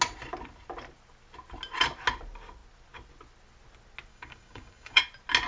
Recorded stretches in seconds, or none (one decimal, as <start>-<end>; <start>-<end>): 0.0-4.1; 5.0-5.5